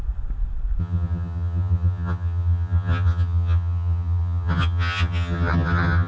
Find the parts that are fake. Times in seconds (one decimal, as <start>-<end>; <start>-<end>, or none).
0.8-6.1